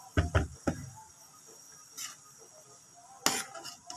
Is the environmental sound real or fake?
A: real